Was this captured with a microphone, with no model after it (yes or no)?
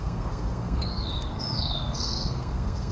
no